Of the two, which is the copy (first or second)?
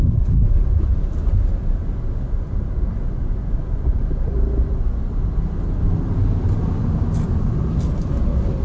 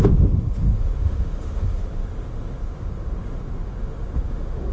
second